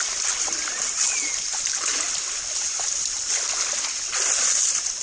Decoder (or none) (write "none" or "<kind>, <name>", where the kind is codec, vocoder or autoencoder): none